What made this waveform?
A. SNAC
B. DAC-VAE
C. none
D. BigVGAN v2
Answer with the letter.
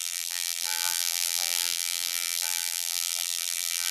D